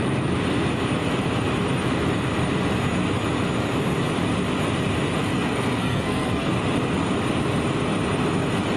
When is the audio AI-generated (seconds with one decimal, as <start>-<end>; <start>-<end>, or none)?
5.2-6.5